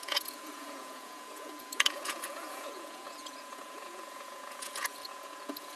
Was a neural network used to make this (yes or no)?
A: yes